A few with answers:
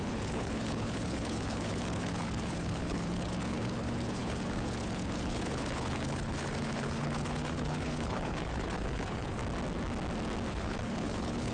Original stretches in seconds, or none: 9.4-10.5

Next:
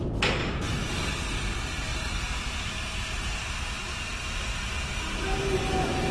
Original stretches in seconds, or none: 0.0-0.4; 1.1-1.9; 4.1-6.1